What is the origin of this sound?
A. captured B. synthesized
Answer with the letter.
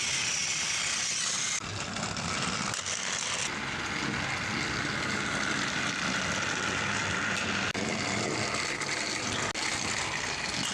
A